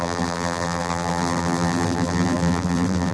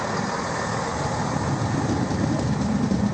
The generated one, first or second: first